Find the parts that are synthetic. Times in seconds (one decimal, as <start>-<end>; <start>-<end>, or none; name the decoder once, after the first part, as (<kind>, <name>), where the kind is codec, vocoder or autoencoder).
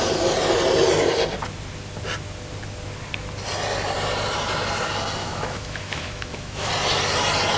5.2-6.7 (autoencoder, DAC-VAE)